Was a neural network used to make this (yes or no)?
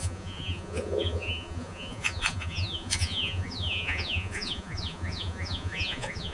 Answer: yes